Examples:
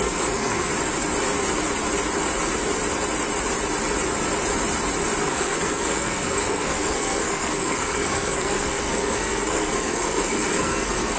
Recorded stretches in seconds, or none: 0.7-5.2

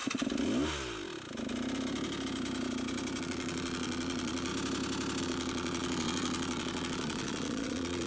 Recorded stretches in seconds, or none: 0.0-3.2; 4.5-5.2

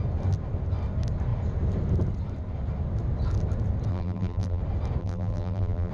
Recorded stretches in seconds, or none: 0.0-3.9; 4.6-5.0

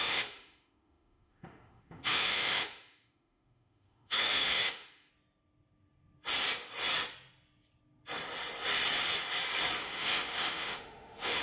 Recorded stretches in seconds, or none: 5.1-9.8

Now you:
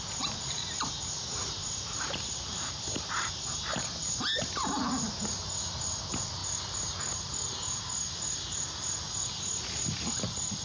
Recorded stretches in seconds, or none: 0.0-1.6; 3.4-10.6

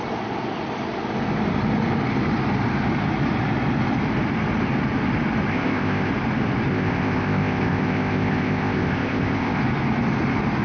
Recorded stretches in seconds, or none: 0.0-5.5; 6.1-6.7; 9.6-10.6